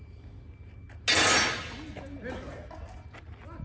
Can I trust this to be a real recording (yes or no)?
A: yes